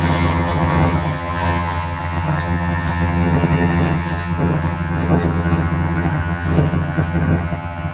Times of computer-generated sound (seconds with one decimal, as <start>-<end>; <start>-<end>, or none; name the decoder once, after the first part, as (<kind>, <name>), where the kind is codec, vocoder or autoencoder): 0.0-7.9 (vocoder, HiFi-GAN)